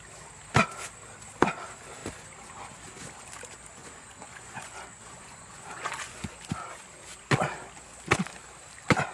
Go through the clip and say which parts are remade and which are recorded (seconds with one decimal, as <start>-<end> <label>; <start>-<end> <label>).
0.0-3.8 recorded; 3.8-6.3 remade; 6.3-9.1 recorded